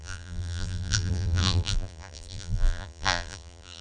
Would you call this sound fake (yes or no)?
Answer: yes